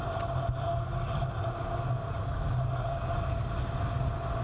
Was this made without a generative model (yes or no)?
yes